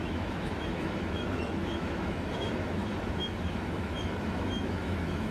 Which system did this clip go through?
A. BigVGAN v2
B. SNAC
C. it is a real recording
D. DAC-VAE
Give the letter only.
D